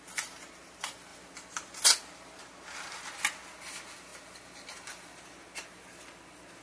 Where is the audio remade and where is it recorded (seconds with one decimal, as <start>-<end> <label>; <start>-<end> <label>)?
0.0-1.1 recorded; 1.1-2.4 remade; 2.4-6.6 recorded